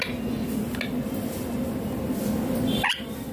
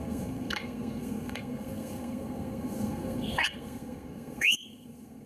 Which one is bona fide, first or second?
first